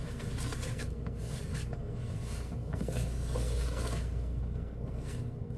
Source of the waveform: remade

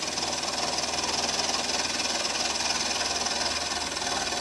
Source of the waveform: recorded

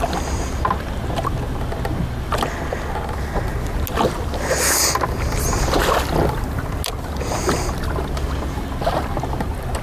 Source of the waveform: recorded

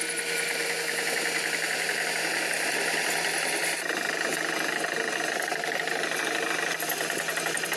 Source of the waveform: recorded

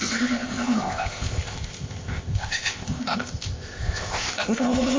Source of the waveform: remade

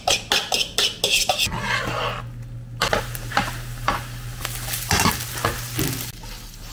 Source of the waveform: recorded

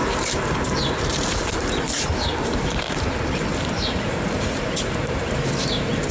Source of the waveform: remade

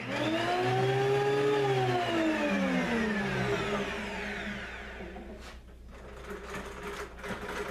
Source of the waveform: recorded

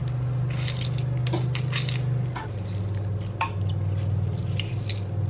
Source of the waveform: recorded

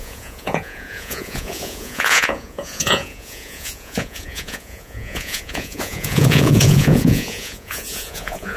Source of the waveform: remade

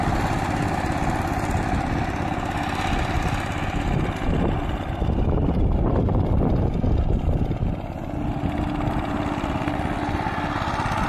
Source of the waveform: recorded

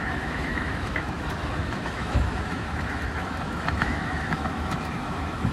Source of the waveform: remade